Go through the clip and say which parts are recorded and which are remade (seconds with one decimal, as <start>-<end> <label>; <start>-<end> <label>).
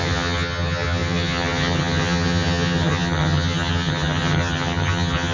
0.0-5.3 remade